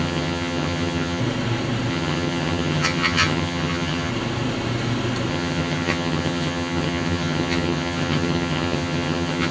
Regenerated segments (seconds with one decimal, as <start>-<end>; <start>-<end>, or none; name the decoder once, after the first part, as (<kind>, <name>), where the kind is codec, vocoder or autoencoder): 0.0-1.2 (vocoder, HiFi-GAN); 1.9-4.1; 5.3-9.5